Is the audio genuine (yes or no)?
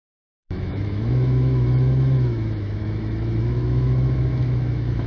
no